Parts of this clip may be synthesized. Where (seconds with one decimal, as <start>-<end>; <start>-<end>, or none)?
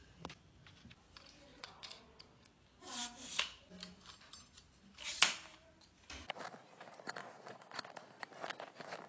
1.5-2.5; 7.2-7.9